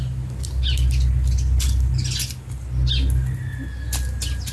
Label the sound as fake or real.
real